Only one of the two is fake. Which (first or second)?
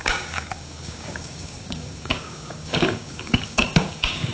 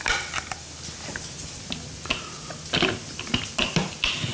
first